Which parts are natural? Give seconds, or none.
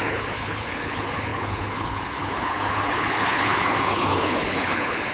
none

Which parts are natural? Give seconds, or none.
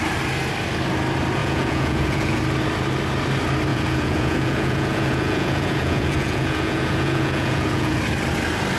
0.0-1.4; 2.4-3.7; 8.0-8.8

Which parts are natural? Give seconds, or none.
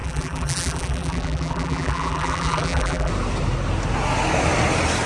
3.1-5.1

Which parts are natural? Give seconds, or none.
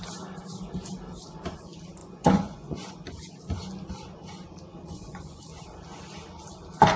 0.0-2.0; 2.9-4.7; 5.4-7.0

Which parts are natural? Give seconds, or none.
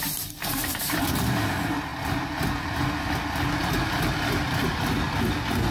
0.0-0.4; 0.9-5.7